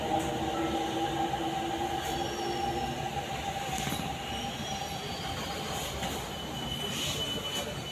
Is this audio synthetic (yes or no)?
no